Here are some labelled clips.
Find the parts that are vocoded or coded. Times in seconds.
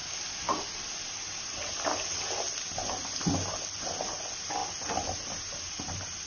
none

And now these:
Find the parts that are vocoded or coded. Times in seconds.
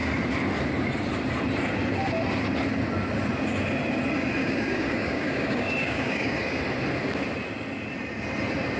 4.4-6.6 (codec, DAC)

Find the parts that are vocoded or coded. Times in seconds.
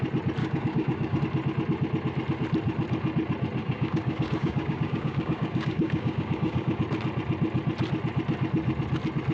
0.4-1.2 (codec, DAC); 3.6-6.8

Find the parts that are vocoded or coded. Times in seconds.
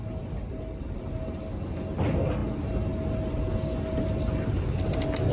none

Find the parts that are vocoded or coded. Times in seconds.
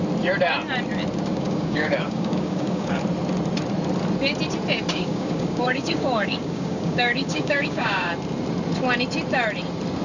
1.3-3.0 (codec, DAC); 4.9-8.1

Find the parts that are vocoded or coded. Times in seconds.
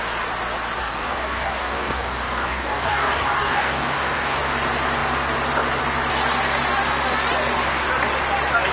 0.8-4.4 (codec, DAC)